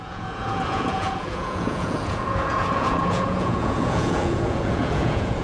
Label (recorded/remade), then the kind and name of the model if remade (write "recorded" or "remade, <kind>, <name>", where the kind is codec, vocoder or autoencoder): remade, vocoder, Vocos